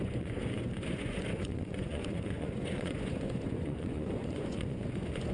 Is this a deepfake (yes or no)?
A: yes